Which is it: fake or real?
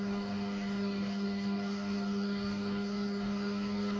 fake